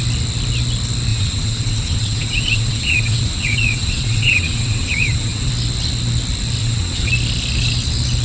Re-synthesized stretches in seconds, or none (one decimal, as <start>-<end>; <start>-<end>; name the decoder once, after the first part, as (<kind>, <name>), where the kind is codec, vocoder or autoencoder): 1.1-5.5 (vocoder, WaveNeXt); 6.6-7.1

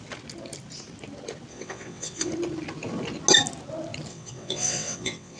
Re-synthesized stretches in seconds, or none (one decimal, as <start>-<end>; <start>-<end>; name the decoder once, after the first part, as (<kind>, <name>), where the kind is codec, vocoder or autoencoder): 1.5-2.3 (vocoder, WaveNeXt); 4.1-5.4

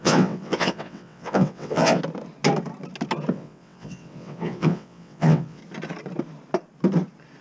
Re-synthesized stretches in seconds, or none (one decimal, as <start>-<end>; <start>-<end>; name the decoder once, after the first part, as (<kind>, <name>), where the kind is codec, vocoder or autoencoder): 0.0-2.0 (vocoder, WaveNeXt); 3.3-5.6

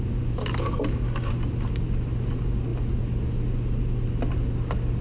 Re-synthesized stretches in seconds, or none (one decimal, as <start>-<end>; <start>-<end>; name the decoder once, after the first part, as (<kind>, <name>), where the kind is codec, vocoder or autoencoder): none

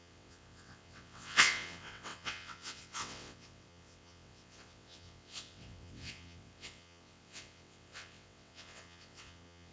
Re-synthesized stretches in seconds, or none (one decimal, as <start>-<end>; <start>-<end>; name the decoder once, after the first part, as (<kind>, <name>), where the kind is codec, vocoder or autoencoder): 0.0-9.7 (vocoder, WaveNeXt)